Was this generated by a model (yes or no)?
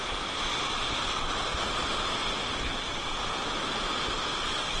no